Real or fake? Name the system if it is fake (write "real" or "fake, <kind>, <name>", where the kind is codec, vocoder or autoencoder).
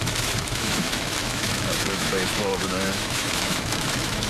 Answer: fake, autoencoder, DAC-VAE